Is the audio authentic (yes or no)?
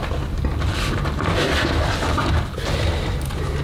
yes